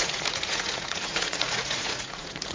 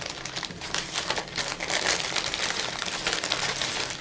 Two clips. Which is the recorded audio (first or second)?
second